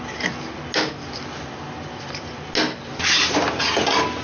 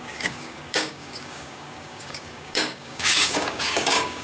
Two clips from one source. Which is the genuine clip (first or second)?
first